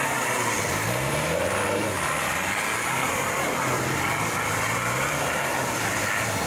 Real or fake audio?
real